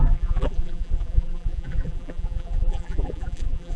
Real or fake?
fake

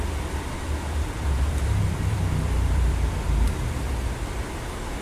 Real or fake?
fake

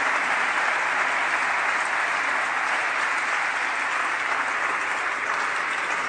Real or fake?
real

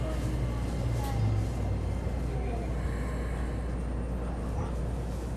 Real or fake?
real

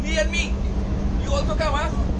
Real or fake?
real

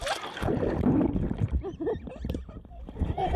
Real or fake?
real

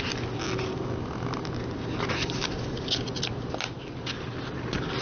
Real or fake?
real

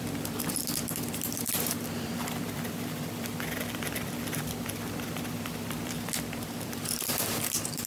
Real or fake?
fake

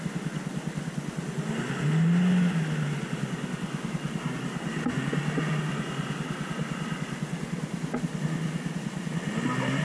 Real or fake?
real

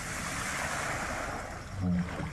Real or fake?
real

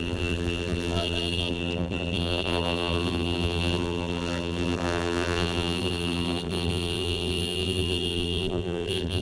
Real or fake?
fake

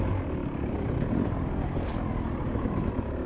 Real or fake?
real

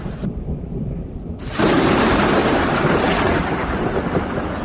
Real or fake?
fake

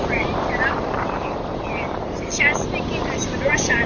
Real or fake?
fake